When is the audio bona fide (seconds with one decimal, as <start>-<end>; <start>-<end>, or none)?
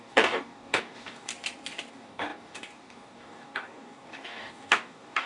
1.3-1.9